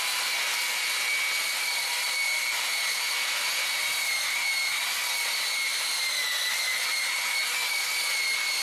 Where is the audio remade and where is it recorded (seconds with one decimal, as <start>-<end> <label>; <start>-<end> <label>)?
0.0-8.6 recorded